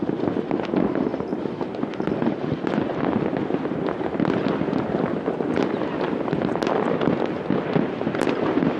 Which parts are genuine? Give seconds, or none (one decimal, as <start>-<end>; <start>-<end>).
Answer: 0.0-8.8